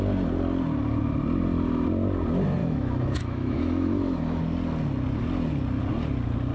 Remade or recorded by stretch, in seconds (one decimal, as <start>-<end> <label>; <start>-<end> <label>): 0.0-2.6 recorded; 2.6-4.4 remade; 4.4-6.5 recorded